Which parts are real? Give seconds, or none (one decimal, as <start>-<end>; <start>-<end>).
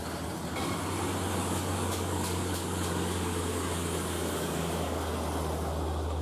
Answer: 0.0-1.4; 5.1-6.2